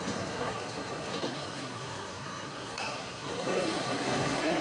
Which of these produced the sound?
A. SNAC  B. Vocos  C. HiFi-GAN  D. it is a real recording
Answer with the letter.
A